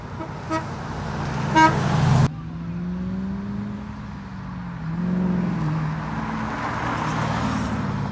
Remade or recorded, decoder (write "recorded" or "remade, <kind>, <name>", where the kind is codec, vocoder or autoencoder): recorded